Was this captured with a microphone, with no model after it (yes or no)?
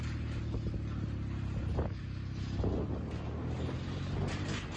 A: yes